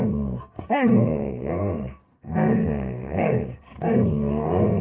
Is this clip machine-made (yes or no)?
yes